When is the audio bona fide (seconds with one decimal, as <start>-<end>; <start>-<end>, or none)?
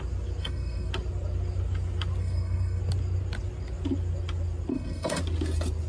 0.0-0.4; 0.9-2.2; 2.8-4.7; 5.2-5.9